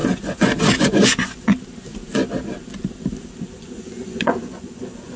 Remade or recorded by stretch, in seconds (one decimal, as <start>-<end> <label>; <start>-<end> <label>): 0.0-1.5 remade; 1.5-3.4 recorded; 3.4-5.2 remade